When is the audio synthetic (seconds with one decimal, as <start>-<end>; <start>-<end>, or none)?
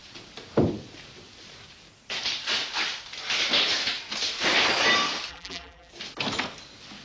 5.3-5.9